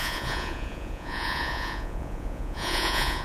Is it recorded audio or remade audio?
remade